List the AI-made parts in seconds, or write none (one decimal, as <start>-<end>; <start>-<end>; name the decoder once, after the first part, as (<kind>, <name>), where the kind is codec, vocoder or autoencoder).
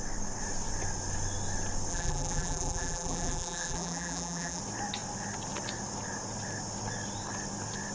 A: 1.9-4.6 (vocoder, BigVGAN v2)